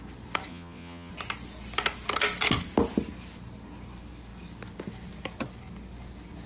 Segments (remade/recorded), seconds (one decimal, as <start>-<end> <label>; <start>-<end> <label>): 0.0-0.5 recorded; 0.5-1.1 remade; 1.1-6.5 recorded